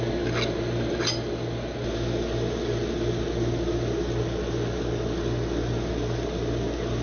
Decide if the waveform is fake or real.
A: real